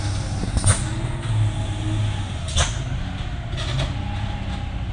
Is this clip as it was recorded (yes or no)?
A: yes